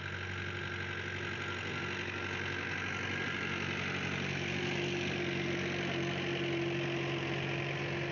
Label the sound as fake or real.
real